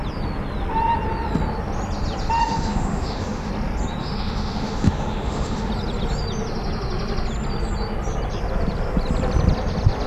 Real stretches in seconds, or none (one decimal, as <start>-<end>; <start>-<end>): 0.0-2.4; 3.5-4.0; 5.7-10.1